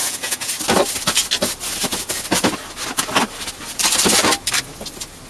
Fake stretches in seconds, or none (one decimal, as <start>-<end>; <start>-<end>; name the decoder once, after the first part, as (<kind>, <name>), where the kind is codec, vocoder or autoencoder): 0.0-0.5 (vocoder, Vocos)